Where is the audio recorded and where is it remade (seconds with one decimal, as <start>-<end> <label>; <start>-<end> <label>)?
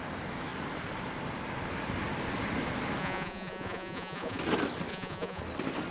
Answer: 0.0-3.0 recorded; 3.0-4.4 remade; 4.4-4.9 recorded; 4.9-5.4 remade; 5.4-5.9 recorded